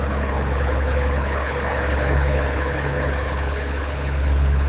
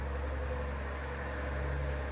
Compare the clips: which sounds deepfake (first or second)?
first